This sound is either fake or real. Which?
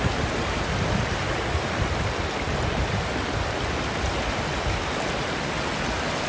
real